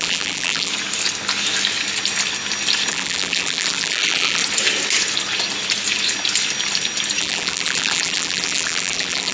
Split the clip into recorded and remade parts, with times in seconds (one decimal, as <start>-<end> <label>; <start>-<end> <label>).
0.0-0.7 remade; 0.7-2.9 recorded; 2.9-4.4 remade; 4.4-7.2 recorded; 7.2-9.3 remade